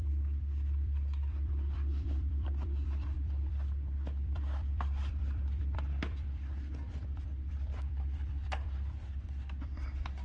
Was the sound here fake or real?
fake